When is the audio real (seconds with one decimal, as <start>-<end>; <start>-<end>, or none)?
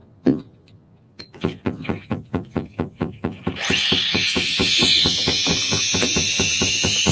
3.4-4.1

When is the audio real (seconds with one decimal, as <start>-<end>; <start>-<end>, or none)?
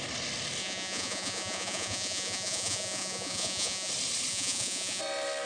0.0-0.6; 3.9-4.3; 5.0-5.5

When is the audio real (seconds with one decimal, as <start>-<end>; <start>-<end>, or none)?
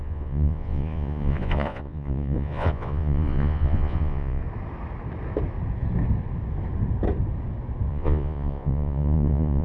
4.4-7.9